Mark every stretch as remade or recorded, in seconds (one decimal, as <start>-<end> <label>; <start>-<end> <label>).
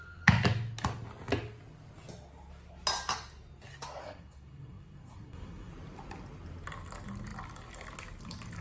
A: 0.0-4.0 recorded; 4.0-5.7 remade; 5.7-8.6 recorded